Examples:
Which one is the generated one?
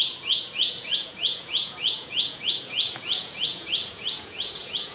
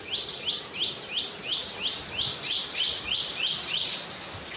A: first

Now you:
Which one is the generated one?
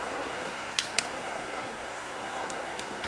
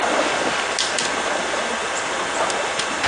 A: first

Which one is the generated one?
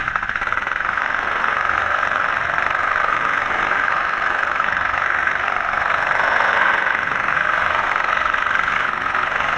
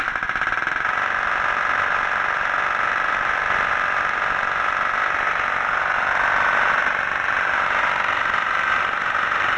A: first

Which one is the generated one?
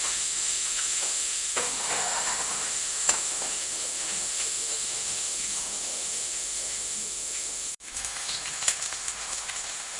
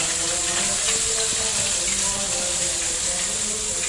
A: first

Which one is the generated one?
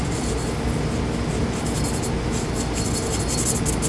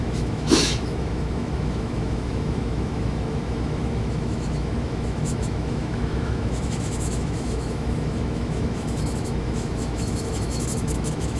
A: second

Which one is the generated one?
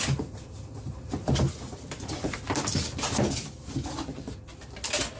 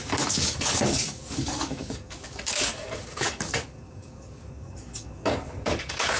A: second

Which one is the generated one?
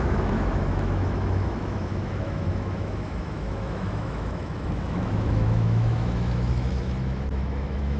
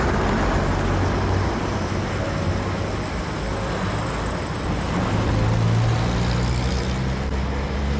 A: first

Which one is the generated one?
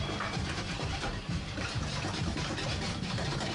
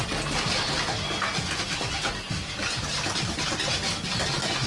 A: first